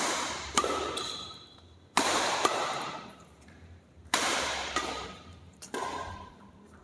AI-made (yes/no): yes